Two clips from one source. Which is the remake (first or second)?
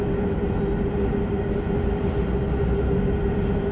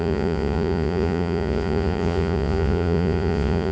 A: second